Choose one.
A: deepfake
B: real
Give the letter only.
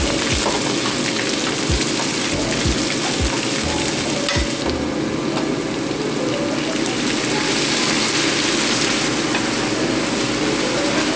B